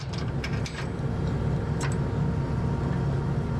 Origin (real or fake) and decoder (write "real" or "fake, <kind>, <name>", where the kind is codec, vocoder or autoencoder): real